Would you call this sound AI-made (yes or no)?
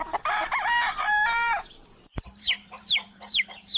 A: yes